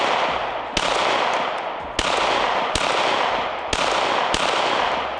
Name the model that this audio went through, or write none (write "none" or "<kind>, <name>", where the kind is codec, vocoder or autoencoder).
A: none